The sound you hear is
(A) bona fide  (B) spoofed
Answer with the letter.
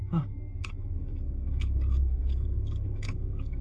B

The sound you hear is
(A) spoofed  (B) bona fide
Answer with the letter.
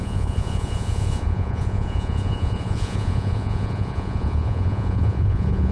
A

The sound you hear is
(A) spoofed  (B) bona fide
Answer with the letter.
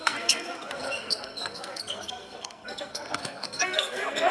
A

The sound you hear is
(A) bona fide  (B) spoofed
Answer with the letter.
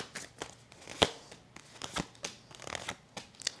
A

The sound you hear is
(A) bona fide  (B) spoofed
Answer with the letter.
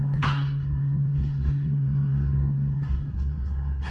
B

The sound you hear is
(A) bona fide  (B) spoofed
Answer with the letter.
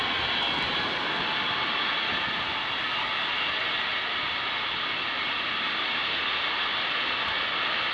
A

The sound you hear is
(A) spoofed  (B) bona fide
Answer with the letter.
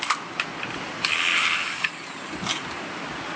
B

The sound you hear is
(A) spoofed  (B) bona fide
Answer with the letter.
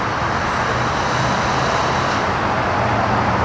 B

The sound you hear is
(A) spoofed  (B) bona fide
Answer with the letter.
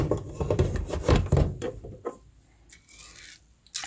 B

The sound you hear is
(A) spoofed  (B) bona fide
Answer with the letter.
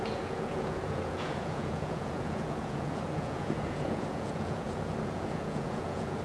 A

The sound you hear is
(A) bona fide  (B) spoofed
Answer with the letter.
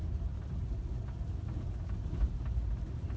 A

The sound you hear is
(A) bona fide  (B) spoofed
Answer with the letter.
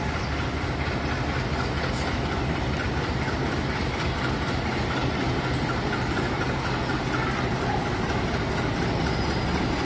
A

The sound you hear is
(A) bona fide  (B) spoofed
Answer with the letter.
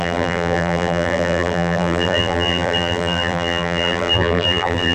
B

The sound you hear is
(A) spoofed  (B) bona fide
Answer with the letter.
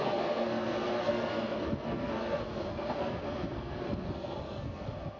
A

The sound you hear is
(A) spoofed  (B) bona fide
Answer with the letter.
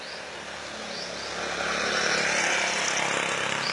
B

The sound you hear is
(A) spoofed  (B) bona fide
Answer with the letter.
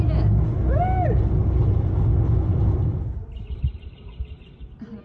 B